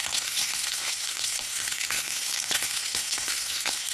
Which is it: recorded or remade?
remade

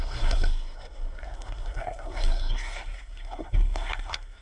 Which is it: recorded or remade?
remade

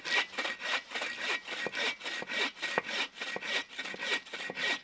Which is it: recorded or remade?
recorded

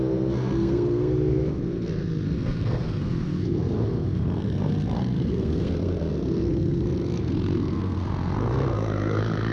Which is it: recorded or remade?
remade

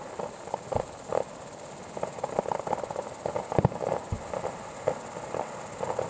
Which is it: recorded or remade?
recorded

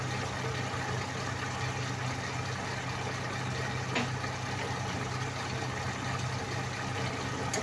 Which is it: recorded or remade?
recorded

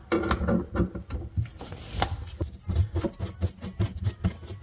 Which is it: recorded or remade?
recorded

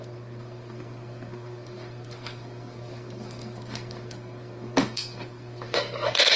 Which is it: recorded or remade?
remade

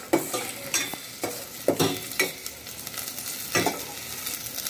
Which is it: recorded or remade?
recorded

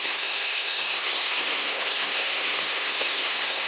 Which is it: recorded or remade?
remade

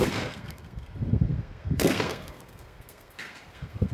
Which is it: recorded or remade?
remade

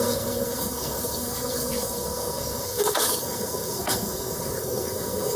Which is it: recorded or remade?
remade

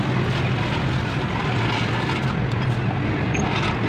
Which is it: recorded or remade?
recorded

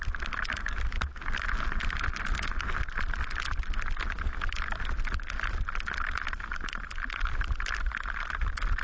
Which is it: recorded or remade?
recorded